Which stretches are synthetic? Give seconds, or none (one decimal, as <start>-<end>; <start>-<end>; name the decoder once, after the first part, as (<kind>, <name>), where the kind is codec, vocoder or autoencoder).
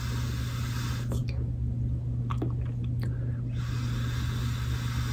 none